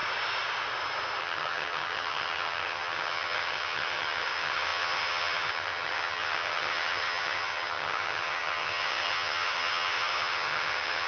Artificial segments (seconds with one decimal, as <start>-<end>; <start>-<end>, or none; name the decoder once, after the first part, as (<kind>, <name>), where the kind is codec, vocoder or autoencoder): 1.2-11.1 (vocoder, HiFi-GAN)